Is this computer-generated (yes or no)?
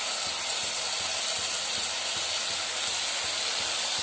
no